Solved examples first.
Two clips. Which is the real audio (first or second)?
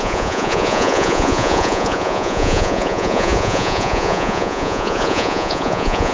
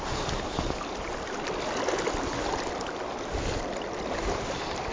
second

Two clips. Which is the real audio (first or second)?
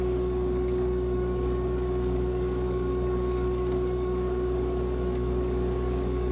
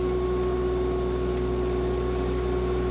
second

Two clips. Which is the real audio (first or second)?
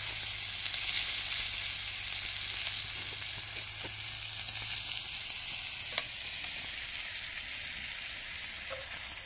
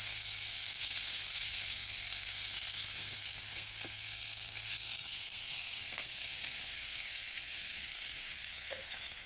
first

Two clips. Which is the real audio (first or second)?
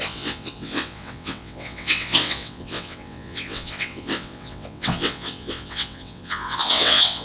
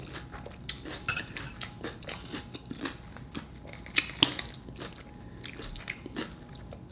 second